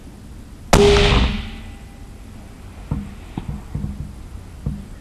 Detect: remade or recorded recorded